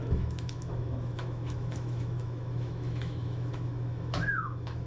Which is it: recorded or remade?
remade